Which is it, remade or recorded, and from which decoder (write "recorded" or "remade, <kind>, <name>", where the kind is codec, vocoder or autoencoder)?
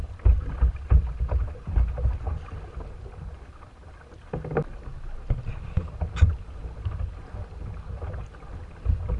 recorded